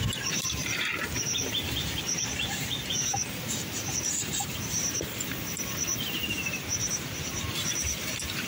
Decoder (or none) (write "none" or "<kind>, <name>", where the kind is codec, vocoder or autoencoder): vocoder, BigVGAN v2